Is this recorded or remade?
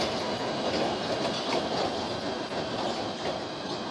recorded